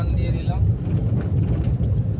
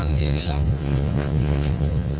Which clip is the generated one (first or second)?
second